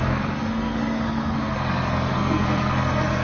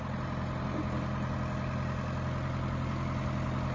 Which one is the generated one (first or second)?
first